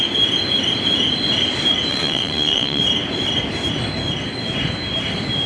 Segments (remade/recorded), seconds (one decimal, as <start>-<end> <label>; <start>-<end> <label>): 0.0-1.9 recorded; 1.9-2.8 remade; 2.8-5.5 recorded